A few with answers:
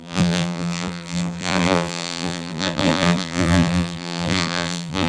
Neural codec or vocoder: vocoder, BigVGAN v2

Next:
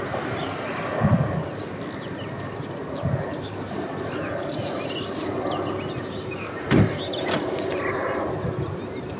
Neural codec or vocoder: none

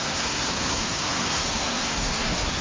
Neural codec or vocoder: codec, SNAC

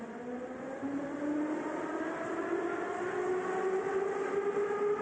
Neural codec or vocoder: none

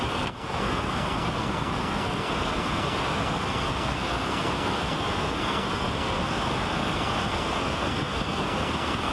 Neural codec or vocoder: codec, SNAC